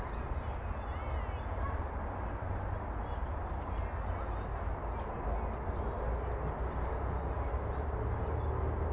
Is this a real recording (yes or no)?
yes